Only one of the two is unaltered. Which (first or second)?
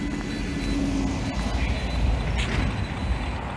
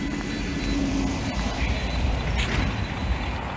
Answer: first